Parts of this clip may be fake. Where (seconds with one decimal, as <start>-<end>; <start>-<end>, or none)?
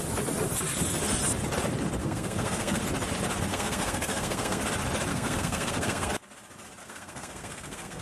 2.0-2.8; 3.5-4.6; 5.1-6.1; 6.8-8.0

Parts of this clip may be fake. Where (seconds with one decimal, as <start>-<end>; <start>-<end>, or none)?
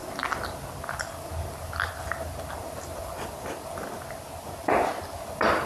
none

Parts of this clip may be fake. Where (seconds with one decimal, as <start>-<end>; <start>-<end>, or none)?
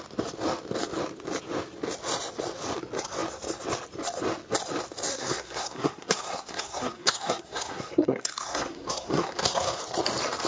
5.1-9.8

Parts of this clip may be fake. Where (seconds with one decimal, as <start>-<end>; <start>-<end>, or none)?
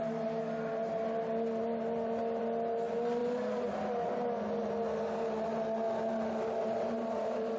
none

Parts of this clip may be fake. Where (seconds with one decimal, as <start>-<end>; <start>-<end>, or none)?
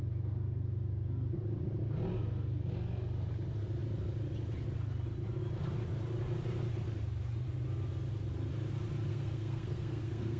9.1-10.4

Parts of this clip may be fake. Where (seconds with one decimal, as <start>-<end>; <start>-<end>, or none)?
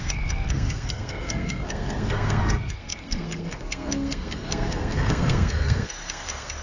0.0-6.6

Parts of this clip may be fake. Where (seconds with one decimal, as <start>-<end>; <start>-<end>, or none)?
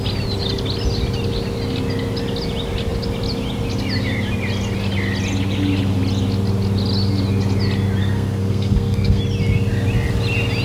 8.0-9.2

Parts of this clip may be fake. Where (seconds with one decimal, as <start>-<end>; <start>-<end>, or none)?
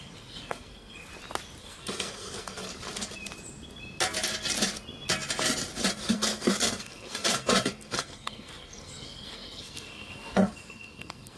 0.0-1.1; 1.6-2.7; 5.9-11.4